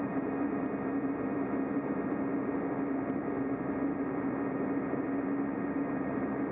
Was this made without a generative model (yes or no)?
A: no